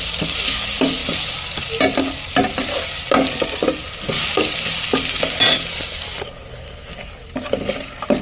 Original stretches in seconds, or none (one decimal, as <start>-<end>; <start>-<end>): 0.0-8.2